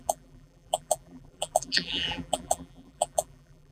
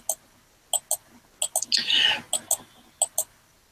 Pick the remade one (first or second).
first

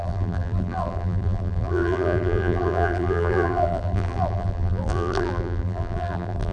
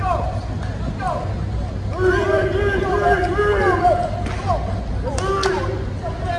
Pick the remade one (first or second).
first